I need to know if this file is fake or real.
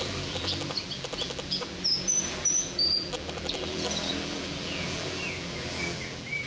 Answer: fake